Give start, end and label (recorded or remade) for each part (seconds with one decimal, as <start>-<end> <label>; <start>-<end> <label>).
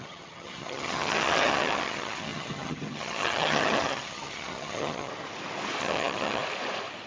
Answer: 0.0-5.1 remade; 5.1-5.8 recorded; 5.8-6.4 remade; 6.4-7.1 recorded